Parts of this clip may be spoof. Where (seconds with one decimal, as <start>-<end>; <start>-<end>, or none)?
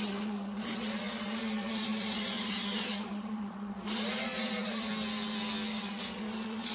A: 0.0-4.9; 5.8-6.7